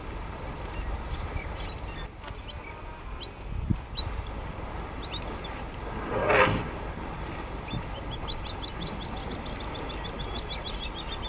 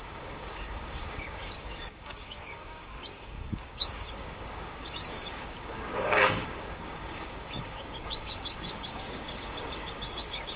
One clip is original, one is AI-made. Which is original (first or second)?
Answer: first